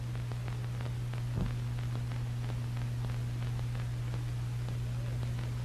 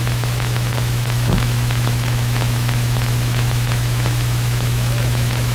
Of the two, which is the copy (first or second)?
second